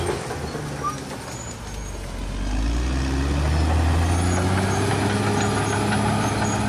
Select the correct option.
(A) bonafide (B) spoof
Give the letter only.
A